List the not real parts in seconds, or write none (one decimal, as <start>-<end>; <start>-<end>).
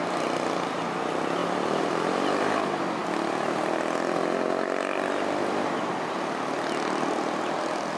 1.4-2.1